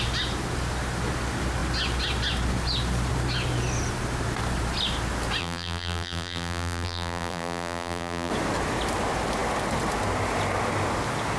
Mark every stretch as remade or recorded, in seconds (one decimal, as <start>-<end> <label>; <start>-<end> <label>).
0.0-5.4 recorded; 5.4-8.3 remade; 8.3-11.4 recorded